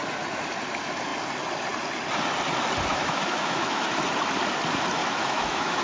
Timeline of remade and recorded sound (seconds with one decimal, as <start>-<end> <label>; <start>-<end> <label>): 0.0-2.9 recorded; 2.9-3.9 remade; 3.9-5.0 recorded; 5.0-5.8 remade

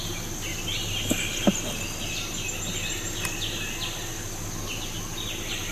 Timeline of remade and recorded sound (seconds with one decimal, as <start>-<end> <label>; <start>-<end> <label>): 0.0-5.7 recorded

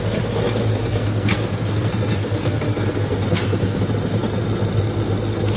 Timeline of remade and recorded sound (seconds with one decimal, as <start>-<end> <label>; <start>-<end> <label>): 0.0-0.7 recorded; 0.7-3.8 remade; 3.8-5.6 recorded

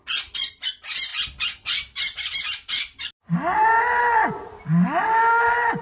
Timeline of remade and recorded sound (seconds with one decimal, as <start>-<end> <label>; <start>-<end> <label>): 0.0-5.8 recorded

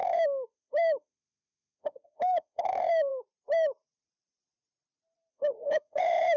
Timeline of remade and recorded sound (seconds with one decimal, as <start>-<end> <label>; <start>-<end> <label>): 0.0-3.1 remade; 3.1-5.3 recorded; 5.3-6.4 remade

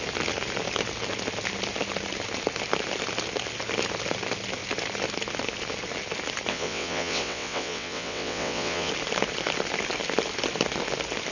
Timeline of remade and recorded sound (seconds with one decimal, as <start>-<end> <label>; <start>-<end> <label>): 0.0-6.5 recorded; 6.5-8.9 remade; 8.9-11.3 recorded